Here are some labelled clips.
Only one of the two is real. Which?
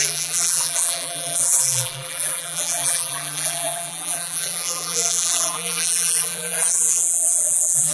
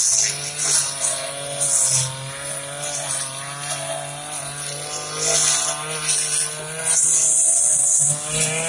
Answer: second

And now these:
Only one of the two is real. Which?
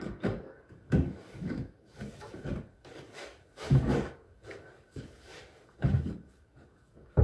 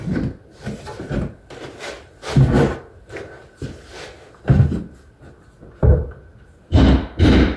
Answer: second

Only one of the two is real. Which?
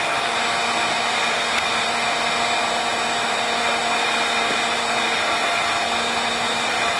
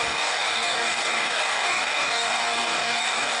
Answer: first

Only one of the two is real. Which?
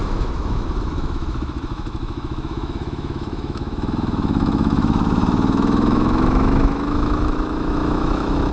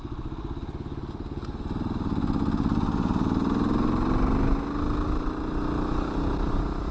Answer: second